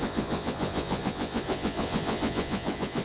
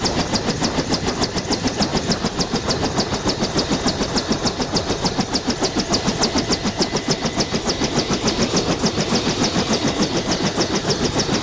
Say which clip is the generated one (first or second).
first